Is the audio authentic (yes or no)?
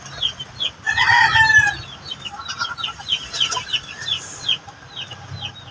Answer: yes